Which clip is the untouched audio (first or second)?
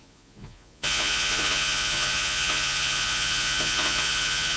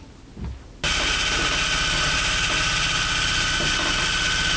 second